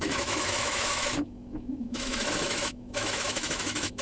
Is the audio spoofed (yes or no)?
yes